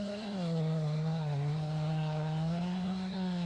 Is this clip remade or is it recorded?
remade